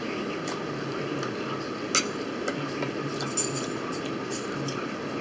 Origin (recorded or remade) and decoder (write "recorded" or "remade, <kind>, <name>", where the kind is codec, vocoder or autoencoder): recorded